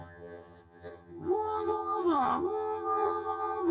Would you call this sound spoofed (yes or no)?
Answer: yes